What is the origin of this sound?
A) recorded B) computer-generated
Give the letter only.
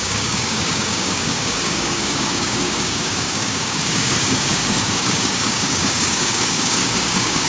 B